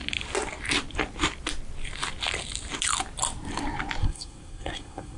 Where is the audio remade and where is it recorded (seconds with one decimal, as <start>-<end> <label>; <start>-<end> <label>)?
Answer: 0.0-4.0 recorded; 4.0-5.2 remade

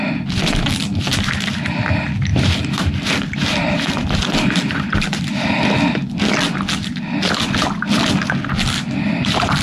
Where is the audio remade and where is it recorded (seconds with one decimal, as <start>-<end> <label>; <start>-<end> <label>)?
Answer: 0.0-2.3 recorded; 2.3-2.9 remade; 2.9-9.6 recorded

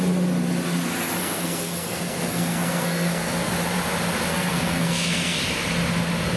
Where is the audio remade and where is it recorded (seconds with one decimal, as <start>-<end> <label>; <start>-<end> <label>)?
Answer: 0.0-1.2 recorded; 1.2-3.5 remade; 3.5-4.3 recorded; 4.3-5.4 remade; 5.4-6.4 recorded